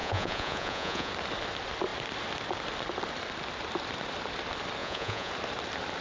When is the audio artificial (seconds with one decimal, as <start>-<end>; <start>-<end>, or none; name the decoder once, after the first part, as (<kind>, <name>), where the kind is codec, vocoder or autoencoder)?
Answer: 0.0-1.1 (vocoder, Vocos); 4.8-5.3